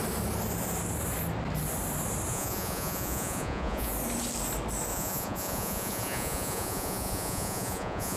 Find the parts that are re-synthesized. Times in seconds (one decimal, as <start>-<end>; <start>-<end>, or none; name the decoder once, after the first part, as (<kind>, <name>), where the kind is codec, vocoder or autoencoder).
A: 2.3-3.9 (vocoder, Vocos); 4.9-8.2